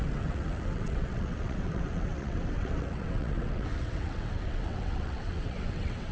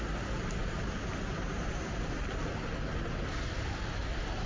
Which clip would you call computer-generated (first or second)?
first